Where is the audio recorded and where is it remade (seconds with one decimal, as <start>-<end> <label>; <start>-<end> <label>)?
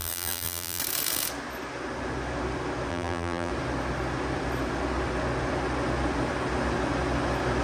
0.0-0.8 remade; 0.8-2.9 recorded; 2.9-3.5 remade; 3.5-7.6 recorded